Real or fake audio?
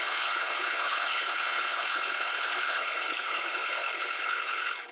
fake